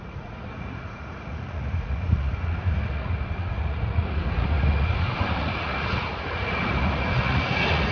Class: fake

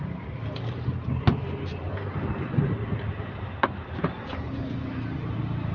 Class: real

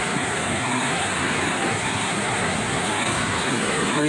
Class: fake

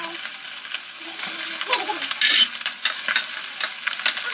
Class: real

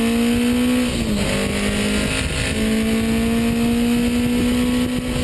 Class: real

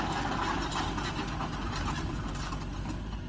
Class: real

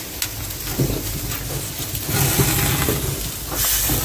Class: real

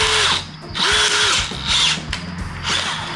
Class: real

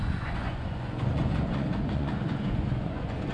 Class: fake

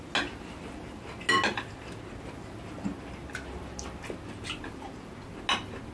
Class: real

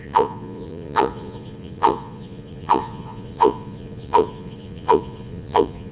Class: fake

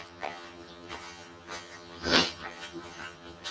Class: fake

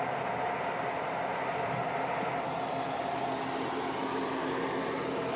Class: real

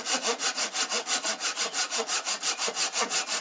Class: fake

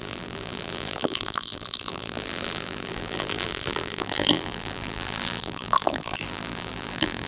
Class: fake